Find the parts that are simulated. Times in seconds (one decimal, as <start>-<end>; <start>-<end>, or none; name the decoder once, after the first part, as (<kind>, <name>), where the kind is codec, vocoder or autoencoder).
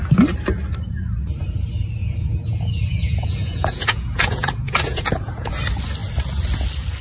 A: 2.0-5.5 (vocoder, Vocos)